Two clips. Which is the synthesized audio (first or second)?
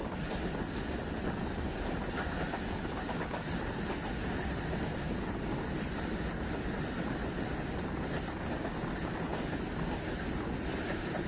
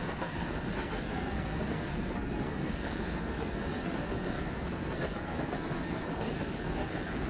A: second